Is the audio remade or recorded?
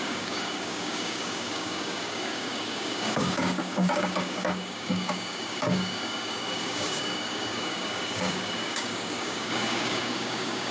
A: remade